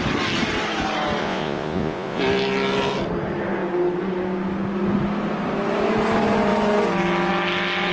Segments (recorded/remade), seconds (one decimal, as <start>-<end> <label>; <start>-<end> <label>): 0.0-1.2 recorded; 1.2-2.2 remade; 2.2-7.9 recorded